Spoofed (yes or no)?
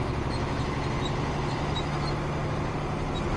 no